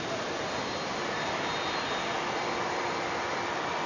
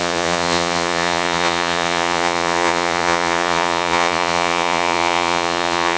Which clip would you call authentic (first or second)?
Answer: first